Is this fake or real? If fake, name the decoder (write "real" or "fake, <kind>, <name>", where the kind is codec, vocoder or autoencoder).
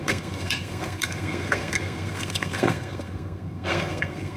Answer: fake, codec, SNAC